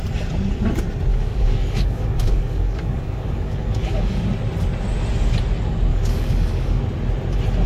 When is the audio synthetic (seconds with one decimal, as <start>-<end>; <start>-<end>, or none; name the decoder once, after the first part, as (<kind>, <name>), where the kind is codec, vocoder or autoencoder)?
1.1-4.2 (codec, DAC); 5.9-6.8

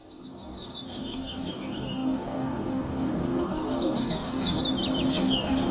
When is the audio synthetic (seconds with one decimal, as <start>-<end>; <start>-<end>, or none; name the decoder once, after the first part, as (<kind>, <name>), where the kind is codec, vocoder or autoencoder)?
0.0-4.6 (codec, DAC); 5.1-5.7